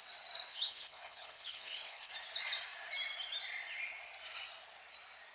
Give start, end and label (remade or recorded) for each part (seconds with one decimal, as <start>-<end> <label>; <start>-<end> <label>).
0.0-0.5 recorded; 0.5-2.1 remade; 2.1-5.3 recorded